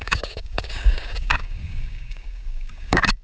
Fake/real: fake